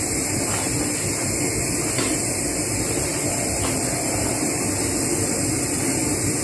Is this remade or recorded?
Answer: recorded